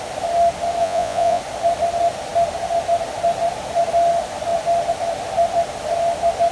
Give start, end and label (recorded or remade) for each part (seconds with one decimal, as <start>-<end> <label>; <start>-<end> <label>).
0.0-0.8 recorded; 0.8-1.4 remade; 1.4-6.5 recorded